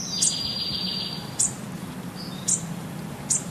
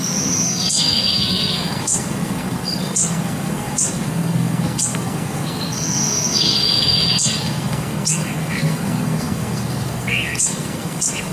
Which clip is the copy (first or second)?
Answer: second